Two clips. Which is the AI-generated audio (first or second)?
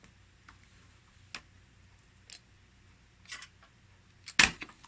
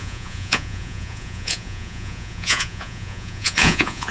second